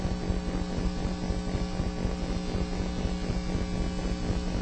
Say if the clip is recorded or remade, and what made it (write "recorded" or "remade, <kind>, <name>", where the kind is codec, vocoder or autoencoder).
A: recorded